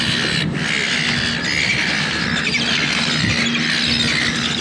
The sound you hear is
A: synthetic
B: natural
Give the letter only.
B